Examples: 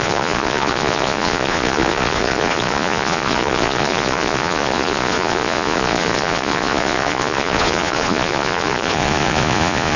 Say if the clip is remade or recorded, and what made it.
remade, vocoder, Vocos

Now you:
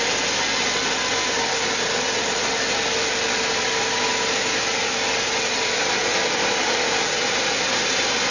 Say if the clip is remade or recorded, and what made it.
recorded